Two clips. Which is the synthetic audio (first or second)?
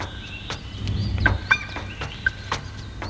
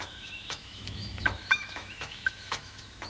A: second